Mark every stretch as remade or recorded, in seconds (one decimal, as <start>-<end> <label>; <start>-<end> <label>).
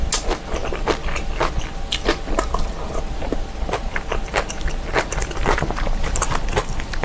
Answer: 0.0-7.0 recorded